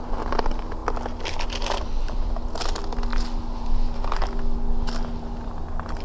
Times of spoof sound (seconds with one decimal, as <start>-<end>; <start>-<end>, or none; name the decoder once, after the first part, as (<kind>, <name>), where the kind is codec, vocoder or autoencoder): none